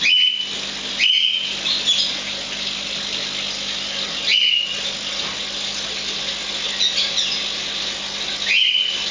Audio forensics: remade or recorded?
recorded